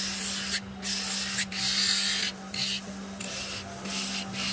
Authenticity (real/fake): real